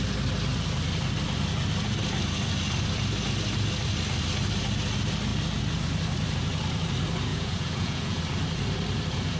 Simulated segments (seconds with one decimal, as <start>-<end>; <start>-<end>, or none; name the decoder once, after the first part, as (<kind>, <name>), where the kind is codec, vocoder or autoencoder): 7.3-8.2 (vocoder, Vocos)